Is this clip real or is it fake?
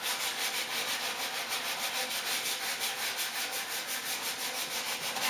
real